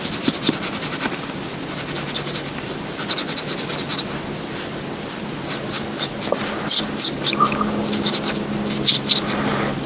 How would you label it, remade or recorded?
recorded